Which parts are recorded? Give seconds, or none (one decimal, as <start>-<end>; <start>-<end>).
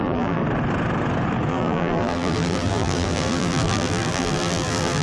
0.4-1.5